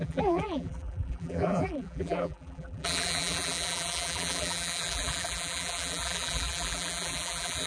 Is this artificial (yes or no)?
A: yes